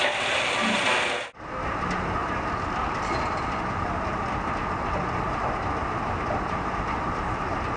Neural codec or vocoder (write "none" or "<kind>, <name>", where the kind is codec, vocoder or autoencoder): none